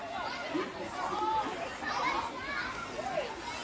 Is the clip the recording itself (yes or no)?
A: yes